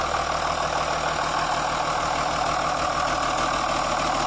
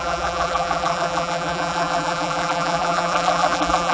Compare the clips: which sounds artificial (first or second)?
second